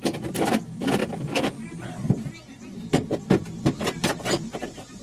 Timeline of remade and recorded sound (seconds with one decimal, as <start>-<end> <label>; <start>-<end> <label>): 0.0-1.0 remade; 1.0-1.8 recorded; 1.8-3.0 remade; 3.0-3.6 recorded; 3.6-5.0 remade